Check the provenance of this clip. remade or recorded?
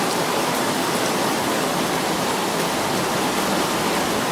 recorded